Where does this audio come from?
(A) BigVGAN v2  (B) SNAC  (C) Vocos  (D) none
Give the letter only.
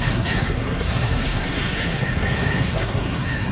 B